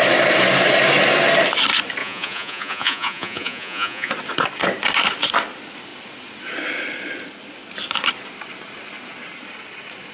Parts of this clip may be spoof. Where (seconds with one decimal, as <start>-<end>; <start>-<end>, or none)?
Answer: 2.0-4.1